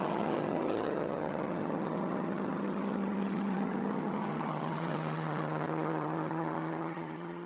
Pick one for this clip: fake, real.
fake